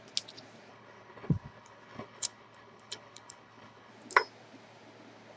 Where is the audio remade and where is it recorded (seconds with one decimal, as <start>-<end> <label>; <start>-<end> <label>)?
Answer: 0.0-0.7 recorded; 0.7-3.9 remade; 3.9-5.4 recorded

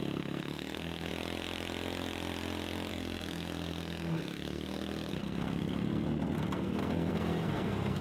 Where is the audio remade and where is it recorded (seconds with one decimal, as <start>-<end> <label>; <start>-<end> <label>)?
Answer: 0.0-1.1 remade; 1.1-2.9 recorded; 2.9-8.0 remade

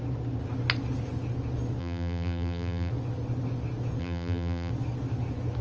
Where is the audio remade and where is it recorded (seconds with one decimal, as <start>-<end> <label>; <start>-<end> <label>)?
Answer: 0.0-1.8 recorded; 1.8-2.9 remade; 2.9-4.0 recorded; 4.0-4.7 remade; 4.7-5.6 recorded

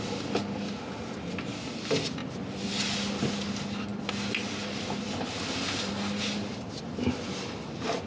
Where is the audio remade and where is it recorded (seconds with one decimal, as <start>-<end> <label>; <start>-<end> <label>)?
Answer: 0.0-8.1 recorded

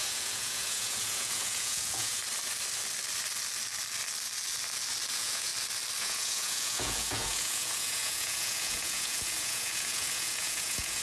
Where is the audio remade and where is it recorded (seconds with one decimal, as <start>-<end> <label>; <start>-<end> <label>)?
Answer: 0.0-2.2 remade; 2.2-5.1 recorded; 5.1-5.5 remade; 5.5-6.0 recorded; 6.0-11.0 remade

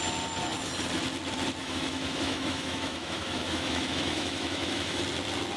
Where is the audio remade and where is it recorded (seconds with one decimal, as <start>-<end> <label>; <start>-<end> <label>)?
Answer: 0.0-1.6 recorded; 1.6-5.0 remade; 5.0-5.6 recorded

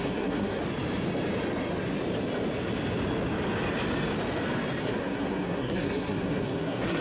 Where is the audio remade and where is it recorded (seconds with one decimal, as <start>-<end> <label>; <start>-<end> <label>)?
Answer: 0.0-0.6 remade; 0.6-4.8 recorded; 4.8-7.0 remade